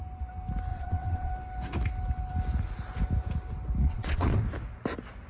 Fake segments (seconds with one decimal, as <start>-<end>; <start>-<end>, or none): 0.7-1.3; 3.8-4.4